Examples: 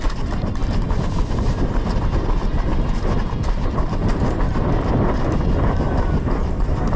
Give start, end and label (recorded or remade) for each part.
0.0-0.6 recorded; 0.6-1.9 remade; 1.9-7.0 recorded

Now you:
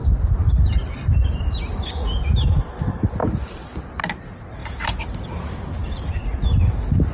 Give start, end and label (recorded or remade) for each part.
0.0-3.2 recorded; 3.2-4.0 remade; 4.0-4.6 recorded; 4.6-5.2 remade; 5.2-7.1 recorded